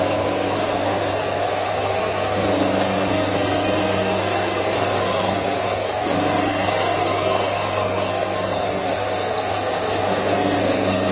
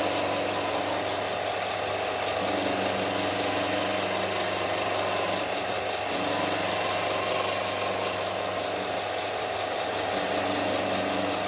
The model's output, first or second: first